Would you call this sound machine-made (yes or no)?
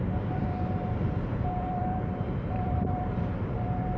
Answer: yes